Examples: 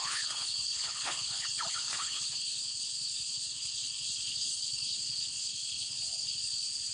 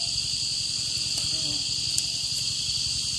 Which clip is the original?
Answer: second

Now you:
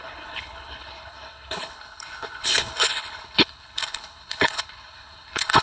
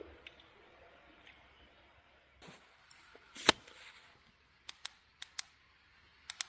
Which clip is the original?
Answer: second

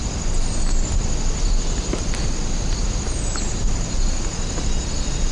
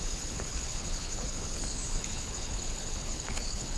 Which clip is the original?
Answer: first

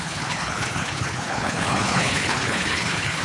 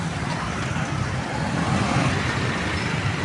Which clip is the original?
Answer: second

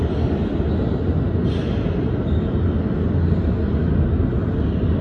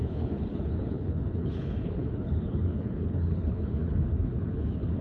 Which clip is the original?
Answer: first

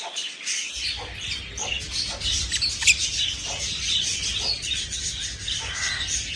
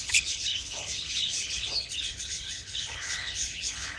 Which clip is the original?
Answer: first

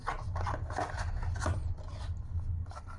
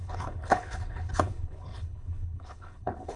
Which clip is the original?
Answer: first